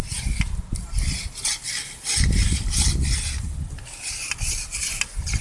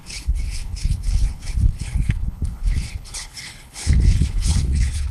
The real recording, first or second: first